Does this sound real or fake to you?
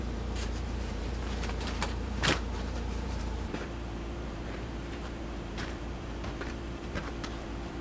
fake